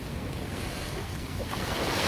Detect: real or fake fake